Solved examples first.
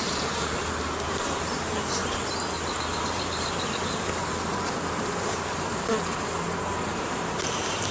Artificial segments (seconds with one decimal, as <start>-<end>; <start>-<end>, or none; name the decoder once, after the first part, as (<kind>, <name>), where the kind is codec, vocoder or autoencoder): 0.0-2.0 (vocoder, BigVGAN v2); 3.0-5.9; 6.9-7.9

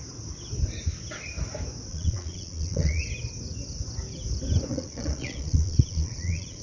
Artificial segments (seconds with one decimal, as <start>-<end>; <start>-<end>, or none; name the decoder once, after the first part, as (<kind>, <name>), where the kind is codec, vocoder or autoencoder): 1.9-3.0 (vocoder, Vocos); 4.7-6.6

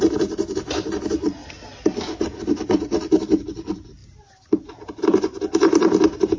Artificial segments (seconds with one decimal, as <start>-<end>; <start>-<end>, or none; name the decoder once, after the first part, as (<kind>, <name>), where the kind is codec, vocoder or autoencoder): none